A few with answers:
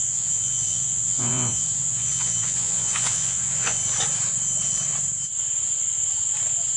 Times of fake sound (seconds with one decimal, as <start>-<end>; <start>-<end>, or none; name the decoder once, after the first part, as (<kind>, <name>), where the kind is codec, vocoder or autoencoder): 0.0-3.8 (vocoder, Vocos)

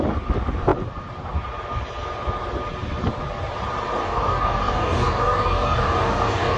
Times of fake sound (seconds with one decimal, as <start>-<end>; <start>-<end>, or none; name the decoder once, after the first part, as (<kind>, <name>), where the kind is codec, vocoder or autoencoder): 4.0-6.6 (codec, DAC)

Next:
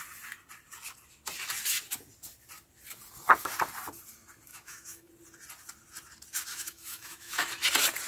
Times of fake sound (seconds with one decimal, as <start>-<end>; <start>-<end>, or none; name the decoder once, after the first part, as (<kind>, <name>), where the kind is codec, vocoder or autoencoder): 4.5-5.1 (autoencoder, DAC-VAE); 6.5-7.5